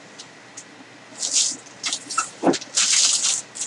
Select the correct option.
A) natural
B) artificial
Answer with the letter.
A